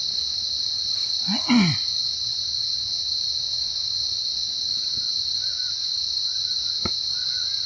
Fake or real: real